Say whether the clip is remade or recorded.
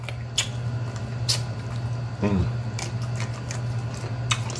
recorded